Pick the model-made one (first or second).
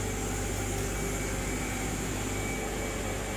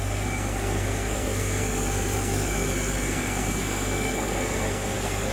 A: second